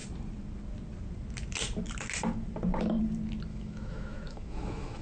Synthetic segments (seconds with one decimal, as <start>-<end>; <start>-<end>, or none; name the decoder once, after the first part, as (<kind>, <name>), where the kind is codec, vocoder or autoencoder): 3.5-5.0 (autoencoder, DAC-VAE)